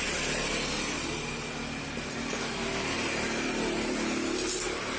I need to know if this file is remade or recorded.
recorded